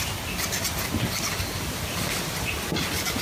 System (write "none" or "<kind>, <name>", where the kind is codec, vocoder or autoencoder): none